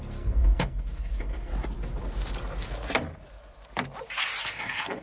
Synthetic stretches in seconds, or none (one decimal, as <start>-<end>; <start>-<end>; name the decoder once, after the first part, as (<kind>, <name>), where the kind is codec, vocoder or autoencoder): 0.0-1.5 (codec, SNAC); 4.4-5.0